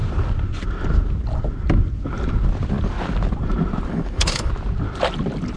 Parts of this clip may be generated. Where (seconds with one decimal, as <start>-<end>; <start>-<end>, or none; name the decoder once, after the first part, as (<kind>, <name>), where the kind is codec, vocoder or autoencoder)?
3.9-4.5 (codec, HILCodec)

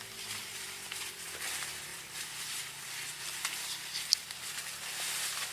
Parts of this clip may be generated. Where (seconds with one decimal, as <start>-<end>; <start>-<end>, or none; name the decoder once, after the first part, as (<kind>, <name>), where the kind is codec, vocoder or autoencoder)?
0.4-1.0 (vocoder, BigVGAN v2)

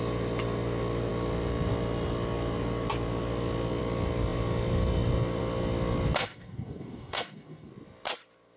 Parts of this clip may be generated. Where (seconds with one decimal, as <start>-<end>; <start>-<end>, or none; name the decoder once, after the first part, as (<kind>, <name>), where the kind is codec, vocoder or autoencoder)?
6.2-7.7 (codec, DAC)

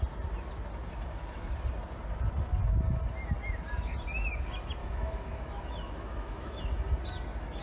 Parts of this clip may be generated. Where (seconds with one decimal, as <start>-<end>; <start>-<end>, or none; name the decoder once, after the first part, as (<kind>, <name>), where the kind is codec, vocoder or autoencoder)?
4.8-6.6 (autoencoder, DAC-VAE)